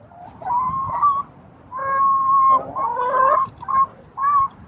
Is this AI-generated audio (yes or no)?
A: no